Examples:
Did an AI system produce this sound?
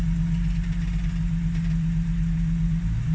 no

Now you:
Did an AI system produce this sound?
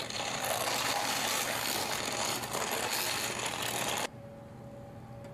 no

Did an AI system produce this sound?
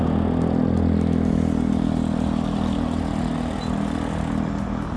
no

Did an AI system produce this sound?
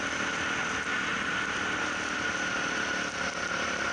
no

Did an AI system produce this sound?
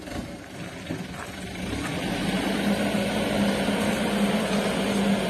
no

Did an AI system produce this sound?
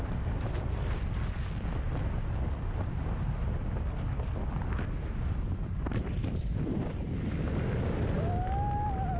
no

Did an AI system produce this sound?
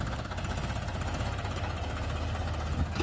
no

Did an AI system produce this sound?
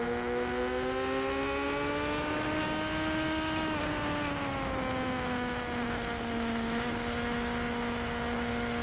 no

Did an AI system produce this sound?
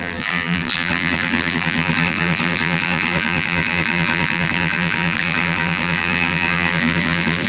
yes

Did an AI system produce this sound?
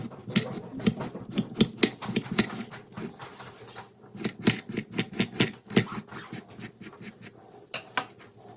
no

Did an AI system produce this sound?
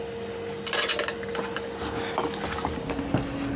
no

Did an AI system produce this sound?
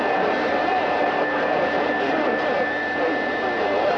no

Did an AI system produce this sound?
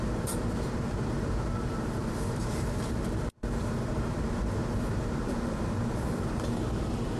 yes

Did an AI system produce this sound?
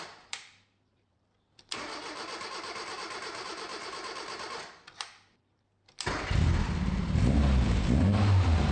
yes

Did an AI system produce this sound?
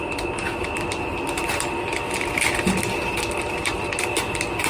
no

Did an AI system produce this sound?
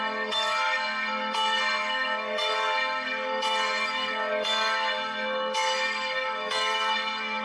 yes